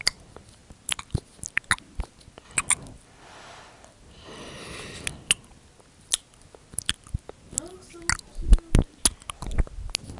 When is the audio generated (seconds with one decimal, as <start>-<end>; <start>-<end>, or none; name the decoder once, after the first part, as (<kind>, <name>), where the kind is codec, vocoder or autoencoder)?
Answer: none

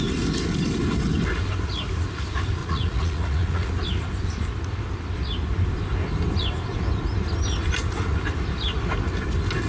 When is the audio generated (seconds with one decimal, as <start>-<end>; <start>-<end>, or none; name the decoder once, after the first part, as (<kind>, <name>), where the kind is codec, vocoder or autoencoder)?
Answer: 2.6-3.7 (vocoder, Vocos)